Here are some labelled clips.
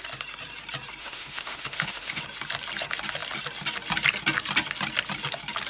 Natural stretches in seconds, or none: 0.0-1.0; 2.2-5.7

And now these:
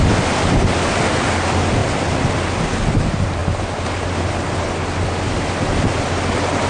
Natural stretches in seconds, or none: 0.0-6.7

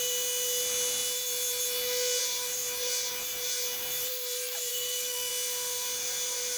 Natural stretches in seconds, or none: 0.0-4.7; 5.3-6.6

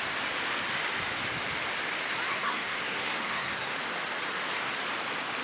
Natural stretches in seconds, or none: 0.0-2.4; 3.7-5.4